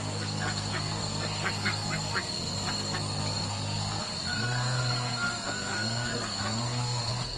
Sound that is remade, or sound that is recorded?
remade